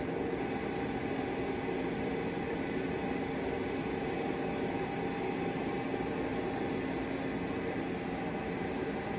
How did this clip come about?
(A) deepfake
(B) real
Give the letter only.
B